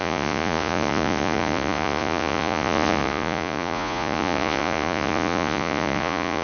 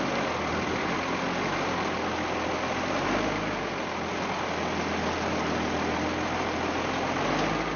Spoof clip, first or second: first